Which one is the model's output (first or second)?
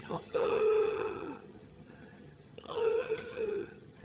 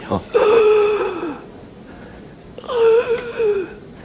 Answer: first